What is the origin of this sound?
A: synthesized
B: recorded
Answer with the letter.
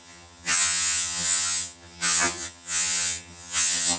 A